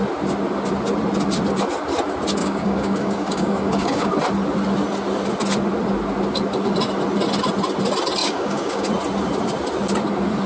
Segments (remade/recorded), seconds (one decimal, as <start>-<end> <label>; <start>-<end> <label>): 0.0-2.4 recorded; 2.4-4.1 remade; 4.1-8.2 recorded; 8.2-8.9 remade; 8.9-10.5 recorded